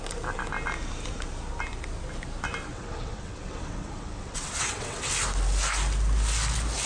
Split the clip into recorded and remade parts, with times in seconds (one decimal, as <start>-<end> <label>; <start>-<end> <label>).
0.0-2.7 recorded; 2.7-5.1 remade; 5.1-6.9 recorded